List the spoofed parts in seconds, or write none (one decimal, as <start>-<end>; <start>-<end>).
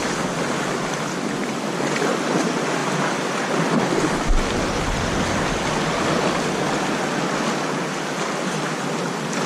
none